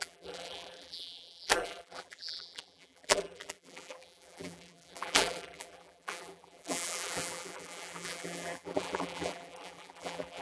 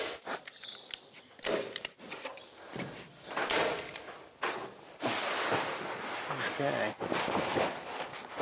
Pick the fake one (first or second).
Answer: first